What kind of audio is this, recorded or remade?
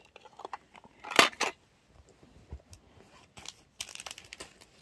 recorded